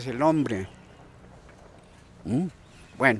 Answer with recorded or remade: recorded